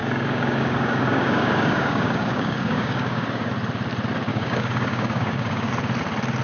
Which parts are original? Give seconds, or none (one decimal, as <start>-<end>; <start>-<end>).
3.5-4.3; 5.7-6.4